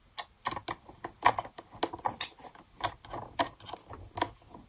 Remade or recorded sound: recorded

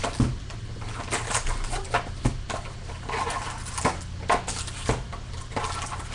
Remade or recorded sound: recorded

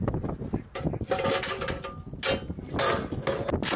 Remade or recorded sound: recorded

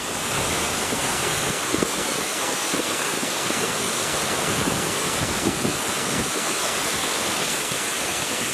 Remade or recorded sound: remade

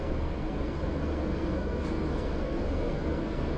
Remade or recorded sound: remade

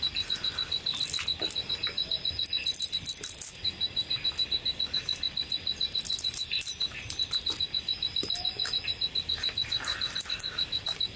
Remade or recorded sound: recorded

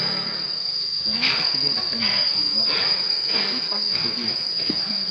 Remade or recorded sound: remade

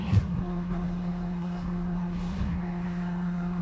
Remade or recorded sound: remade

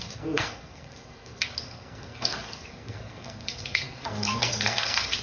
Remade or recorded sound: remade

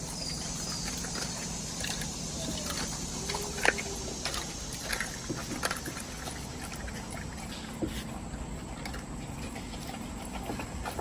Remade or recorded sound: recorded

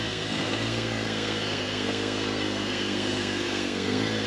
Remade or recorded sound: remade